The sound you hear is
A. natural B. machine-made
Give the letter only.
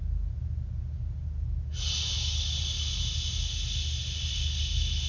A